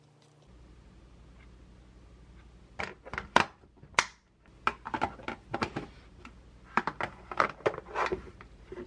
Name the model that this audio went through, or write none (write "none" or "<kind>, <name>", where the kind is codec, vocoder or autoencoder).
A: none